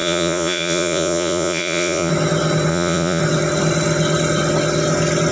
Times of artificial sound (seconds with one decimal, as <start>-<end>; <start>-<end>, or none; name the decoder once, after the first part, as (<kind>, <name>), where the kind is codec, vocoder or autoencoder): 0.0-2.1 (vocoder, Vocos); 2.7-3.2